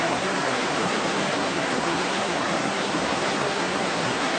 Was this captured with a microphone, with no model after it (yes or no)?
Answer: no